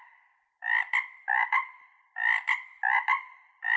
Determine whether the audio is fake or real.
fake